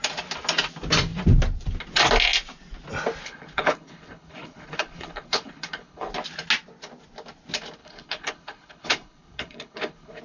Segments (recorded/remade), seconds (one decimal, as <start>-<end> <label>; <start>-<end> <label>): 0.0-3.2 recorded; 3.2-6.1 remade; 6.1-7.8 recorded; 7.8-10.2 remade